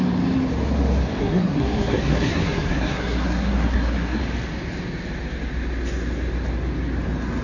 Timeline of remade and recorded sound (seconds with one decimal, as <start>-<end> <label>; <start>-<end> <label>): 0.0-1.2 recorded; 1.2-4.2 remade; 4.2-7.4 recorded